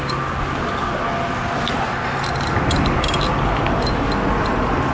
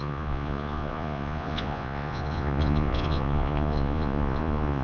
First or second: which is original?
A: first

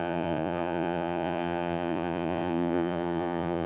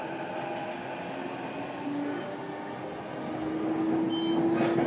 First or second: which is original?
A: second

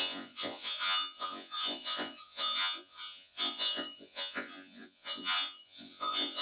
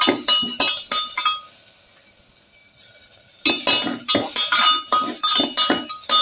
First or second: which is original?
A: second